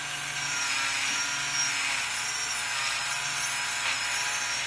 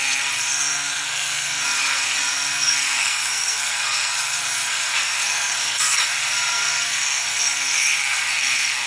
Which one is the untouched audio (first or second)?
first